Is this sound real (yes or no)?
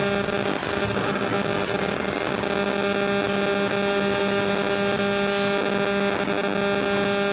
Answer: yes